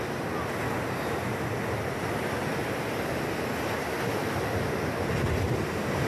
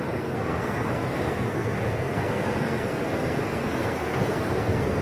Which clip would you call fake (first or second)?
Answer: second